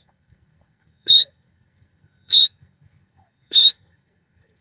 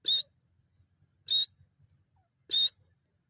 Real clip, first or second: second